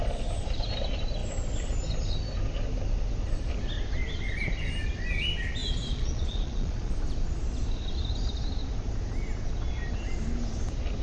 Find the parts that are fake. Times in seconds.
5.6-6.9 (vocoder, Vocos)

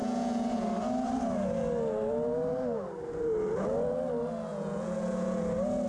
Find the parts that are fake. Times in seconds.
0.0-0.7 (vocoder, Vocos); 4.5-5.4

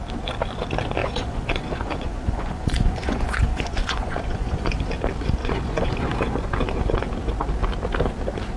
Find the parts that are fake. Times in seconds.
1.0-4.7 (vocoder, Vocos); 5.4-6.5

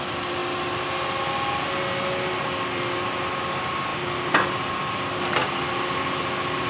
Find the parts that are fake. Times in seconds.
none

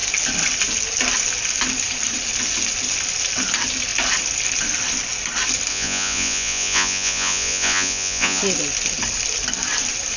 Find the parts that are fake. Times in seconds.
5.7-8.4 (vocoder, Vocos)